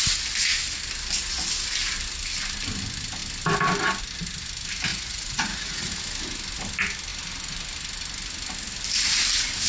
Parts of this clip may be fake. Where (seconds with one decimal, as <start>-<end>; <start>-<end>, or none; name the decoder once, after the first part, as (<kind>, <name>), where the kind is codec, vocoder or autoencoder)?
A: 4.9-5.9 (vocoder, Vocos)